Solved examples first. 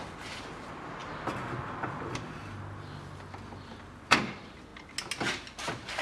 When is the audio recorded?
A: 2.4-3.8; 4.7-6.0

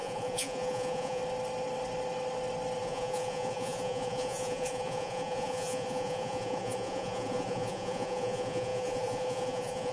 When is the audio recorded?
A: 1.2-2.8

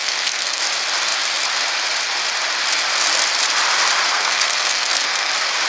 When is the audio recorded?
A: 0.6-4.1; 5.3-5.7

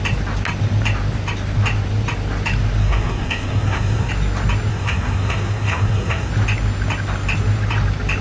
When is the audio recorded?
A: 0.0-2.8; 4.1-4.7; 6.3-8.2

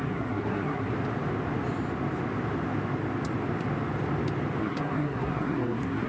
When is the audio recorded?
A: 0.9-4.6

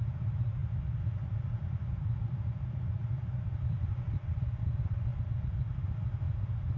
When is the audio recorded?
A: 5.1-6.8